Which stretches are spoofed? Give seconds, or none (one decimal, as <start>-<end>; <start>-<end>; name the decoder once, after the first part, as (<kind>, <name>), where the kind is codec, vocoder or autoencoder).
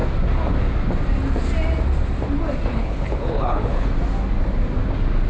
2.7-3.9 (codec, HILCodec)